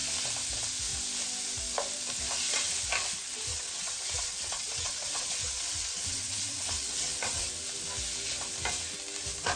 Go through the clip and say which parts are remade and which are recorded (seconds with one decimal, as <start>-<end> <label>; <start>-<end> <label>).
0.0-3.5 recorded; 3.5-7.5 remade; 7.5-9.6 recorded